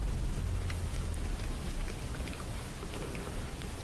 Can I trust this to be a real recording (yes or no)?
yes